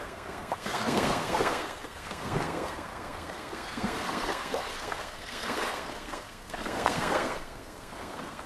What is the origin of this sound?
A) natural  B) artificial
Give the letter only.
B